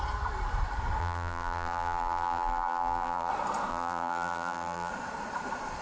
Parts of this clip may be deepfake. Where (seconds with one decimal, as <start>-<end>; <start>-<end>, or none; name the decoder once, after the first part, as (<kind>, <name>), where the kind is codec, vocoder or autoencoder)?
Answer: 1.0-3.3 (vocoder, BigVGAN v2); 3.7-4.9